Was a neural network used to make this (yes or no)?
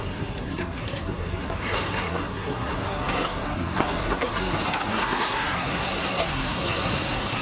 yes